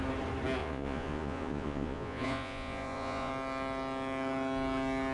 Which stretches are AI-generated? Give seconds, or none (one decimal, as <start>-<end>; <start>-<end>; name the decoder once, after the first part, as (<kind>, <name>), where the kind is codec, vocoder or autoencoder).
0.6-3.3 (vocoder, Vocos)